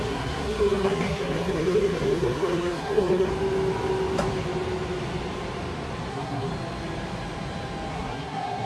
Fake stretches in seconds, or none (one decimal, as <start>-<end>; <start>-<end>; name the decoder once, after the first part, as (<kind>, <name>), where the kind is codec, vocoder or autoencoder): 0.0-3.3 (codec, SNAC); 6.1-6.5; 7.9-8.7